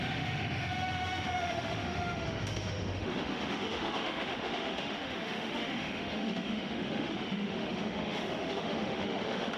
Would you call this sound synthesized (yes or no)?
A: yes